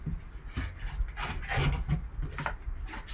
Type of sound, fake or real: real